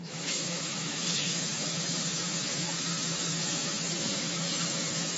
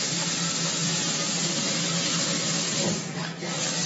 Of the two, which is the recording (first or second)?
second